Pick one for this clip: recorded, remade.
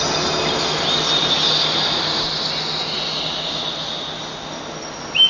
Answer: recorded